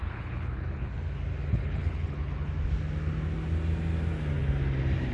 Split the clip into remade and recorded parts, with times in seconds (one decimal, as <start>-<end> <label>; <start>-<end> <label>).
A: 0.0-0.9 remade; 0.9-1.5 recorded; 1.5-2.5 remade; 2.5-5.1 recorded